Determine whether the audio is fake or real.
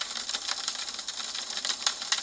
real